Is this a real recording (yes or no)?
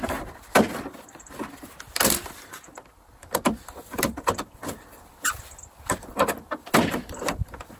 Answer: yes